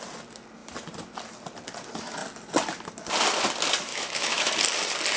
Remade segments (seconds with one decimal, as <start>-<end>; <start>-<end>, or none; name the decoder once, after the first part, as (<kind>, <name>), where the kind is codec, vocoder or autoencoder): 3.9-4.5 (autoencoder, DAC-VAE)